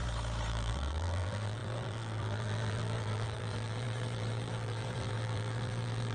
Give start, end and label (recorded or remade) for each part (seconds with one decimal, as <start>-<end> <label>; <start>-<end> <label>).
0.0-0.5 recorded; 0.5-6.1 remade

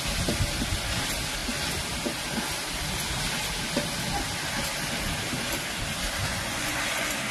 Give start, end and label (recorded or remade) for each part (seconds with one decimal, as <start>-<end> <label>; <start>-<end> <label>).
0.0-6.3 recorded; 6.3-7.3 remade

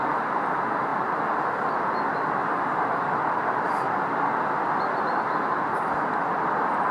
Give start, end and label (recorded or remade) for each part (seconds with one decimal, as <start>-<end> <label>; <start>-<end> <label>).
0.0-6.9 recorded

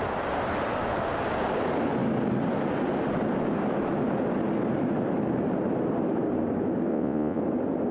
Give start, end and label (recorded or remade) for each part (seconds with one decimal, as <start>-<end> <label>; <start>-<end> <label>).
0.0-6.9 recorded; 6.9-7.4 remade; 7.4-7.9 recorded

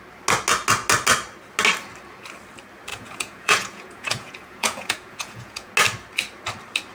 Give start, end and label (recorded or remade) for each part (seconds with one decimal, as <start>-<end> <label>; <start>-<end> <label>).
0.0-2.9 recorded; 2.9-5.7 remade; 5.7-6.9 recorded